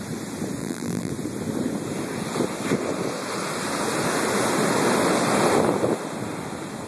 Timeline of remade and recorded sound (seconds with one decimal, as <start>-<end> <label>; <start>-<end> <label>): 0.0-0.6 recorded; 0.6-1.1 remade; 1.1-6.9 recorded